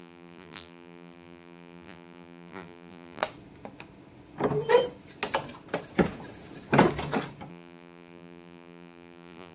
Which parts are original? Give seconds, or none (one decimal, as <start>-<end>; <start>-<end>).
3.2-7.5